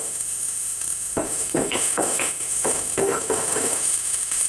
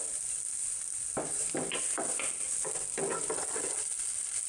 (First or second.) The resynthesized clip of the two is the first